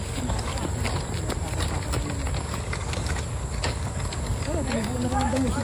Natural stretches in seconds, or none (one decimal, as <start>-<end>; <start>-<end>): 0.6-2.4